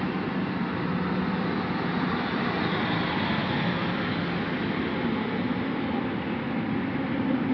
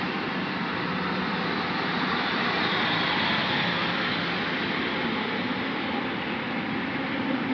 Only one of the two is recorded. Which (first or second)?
first